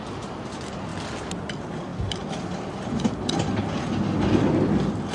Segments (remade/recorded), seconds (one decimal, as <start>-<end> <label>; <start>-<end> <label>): 0.0-5.1 recorded